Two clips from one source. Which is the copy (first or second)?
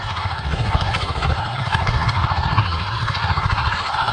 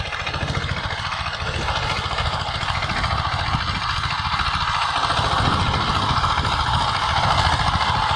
first